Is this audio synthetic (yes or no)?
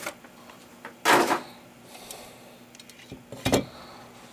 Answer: no